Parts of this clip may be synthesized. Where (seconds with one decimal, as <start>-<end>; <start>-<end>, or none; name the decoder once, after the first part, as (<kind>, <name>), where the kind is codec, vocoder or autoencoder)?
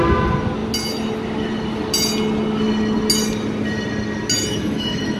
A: 4.5-5.2 (autoencoder, DAC-VAE)